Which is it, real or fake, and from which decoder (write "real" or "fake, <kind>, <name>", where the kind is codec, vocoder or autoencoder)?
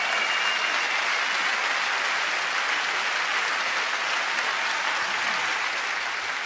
real